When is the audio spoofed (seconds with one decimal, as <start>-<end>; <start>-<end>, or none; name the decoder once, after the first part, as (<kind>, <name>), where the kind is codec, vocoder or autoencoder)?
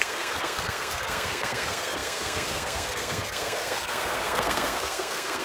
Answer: 0.0-5.4 (codec, SNAC)